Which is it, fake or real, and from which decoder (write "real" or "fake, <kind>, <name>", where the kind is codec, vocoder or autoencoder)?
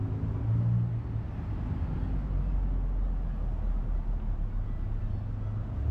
real